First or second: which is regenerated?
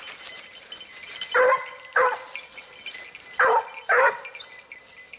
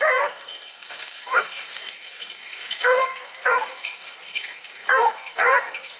second